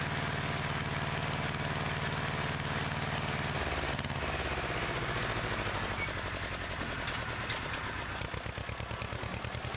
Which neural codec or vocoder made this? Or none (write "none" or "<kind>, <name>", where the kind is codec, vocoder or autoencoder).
none